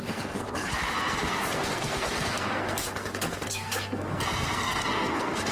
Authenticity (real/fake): fake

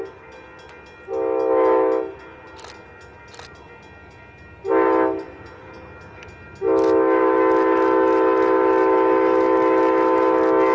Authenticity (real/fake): real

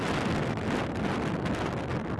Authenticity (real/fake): real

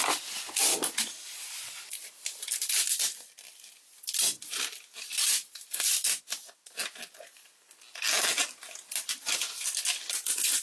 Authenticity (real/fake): real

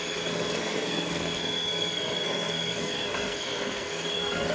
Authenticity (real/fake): fake